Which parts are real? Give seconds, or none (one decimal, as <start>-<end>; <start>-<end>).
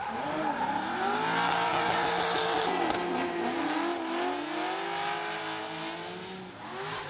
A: 0.0-7.1